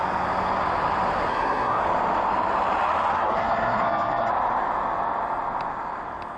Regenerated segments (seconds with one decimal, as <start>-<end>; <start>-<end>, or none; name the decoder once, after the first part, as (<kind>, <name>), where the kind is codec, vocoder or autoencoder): 1.3-1.8 (codec, SNAC); 3.1-4.3